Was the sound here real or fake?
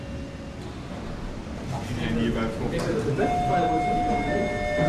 real